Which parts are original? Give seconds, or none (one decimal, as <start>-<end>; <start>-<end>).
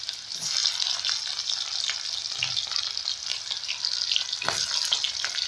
0.0-5.5